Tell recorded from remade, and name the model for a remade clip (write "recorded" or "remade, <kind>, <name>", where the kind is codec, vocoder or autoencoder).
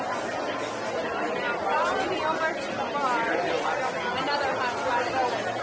recorded